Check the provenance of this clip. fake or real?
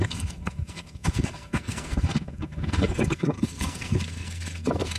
fake